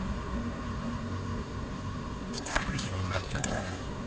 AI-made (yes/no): yes